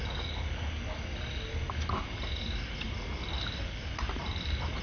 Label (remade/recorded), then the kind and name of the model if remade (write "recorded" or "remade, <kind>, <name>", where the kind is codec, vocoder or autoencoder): recorded